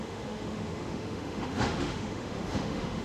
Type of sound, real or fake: fake